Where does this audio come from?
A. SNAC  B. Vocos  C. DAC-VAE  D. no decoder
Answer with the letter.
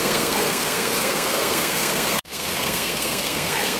A